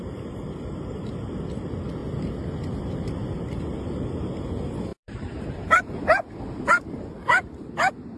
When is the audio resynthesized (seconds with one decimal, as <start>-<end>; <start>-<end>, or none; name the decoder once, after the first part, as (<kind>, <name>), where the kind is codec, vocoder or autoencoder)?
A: 4.9-5.8 (vocoder, BigVGAN v2)